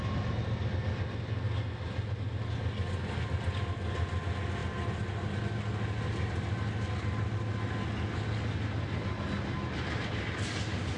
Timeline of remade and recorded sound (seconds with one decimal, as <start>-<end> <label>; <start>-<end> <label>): 0.0-11.0 recorded